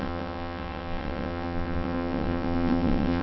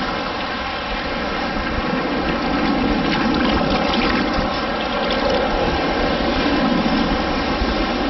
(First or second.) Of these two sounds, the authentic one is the second